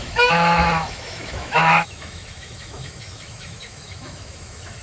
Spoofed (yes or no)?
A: yes